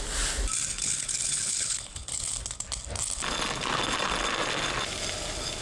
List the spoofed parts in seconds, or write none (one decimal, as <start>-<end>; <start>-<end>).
0.7-2.3